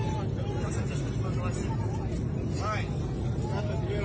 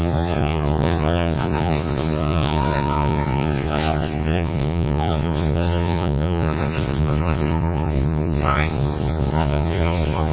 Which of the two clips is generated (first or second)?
second